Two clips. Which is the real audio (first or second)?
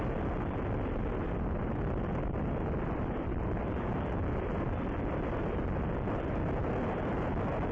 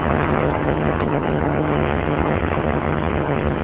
first